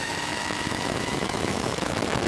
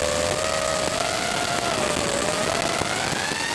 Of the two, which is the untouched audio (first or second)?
second